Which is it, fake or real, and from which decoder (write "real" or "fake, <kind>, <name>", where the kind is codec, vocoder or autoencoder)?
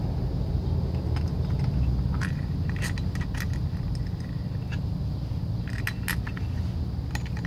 real